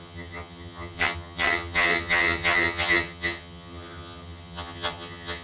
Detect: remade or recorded remade